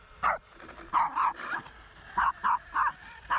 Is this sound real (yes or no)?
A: yes